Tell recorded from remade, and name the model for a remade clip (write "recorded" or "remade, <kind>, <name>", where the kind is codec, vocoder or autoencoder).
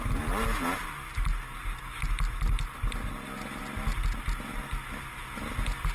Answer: recorded